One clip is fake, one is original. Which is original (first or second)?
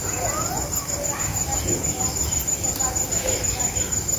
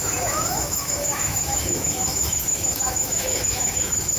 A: first